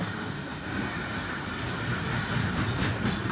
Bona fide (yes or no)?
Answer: yes